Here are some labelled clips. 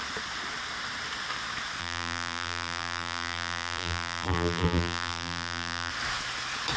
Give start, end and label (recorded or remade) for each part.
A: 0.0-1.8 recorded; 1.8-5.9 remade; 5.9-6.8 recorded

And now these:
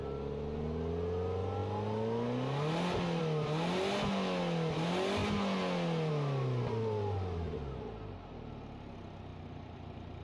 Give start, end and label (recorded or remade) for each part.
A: 0.0-9.3 recorded; 9.3-10.2 remade

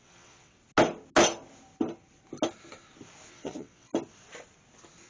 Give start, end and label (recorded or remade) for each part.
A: 0.0-0.6 remade; 0.6-3.3 recorded; 3.3-3.9 remade; 3.9-5.1 recorded

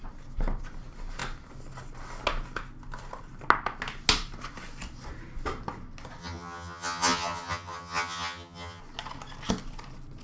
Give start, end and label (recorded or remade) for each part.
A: 0.0-6.2 recorded; 6.2-8.8 remade; 8.8-10.2 recorded

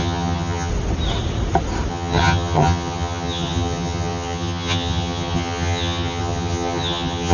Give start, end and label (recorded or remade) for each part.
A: 0.0-0.7 remade; 0.7-1.9 recorded; 1.9-7.3 remade